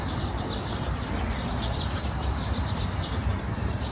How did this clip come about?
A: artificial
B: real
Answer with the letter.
A